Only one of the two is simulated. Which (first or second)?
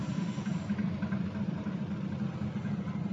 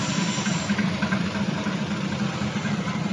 second